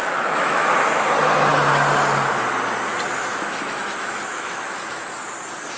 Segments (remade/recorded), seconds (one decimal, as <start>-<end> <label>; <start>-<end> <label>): 0.0-0.7 remade; 0.7-3.3 recorded; 3.3-5.1 remade; 5.1-5.8 recorded